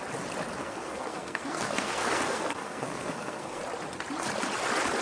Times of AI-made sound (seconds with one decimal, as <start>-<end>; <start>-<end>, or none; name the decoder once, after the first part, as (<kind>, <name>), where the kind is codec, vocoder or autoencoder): 0.6-3.6 (codec, SNAC)